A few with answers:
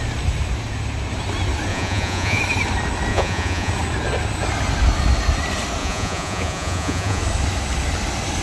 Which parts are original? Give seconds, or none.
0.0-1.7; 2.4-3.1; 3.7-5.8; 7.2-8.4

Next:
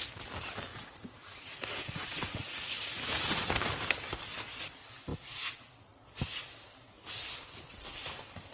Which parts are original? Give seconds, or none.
0.0-0.7; 3.5-8.5

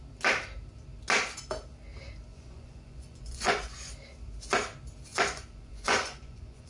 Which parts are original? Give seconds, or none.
0.0-2.3; 3.9-5.1

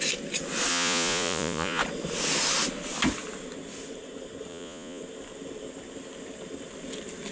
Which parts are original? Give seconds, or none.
0.0-0.7; 1.8-4.5; 5.0-7.3

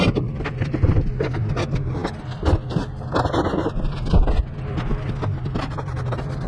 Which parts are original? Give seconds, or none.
0.0-6.5

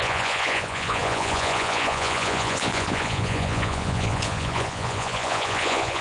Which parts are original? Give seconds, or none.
none

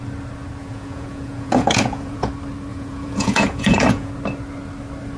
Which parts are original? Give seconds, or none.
0.0-0.6; 2.3-2.7; 4.1-5.2

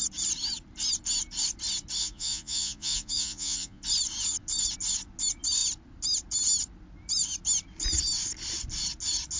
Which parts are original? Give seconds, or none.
0.0-2.0; 3.8-9.4